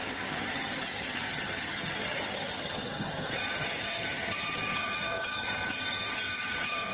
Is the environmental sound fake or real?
fake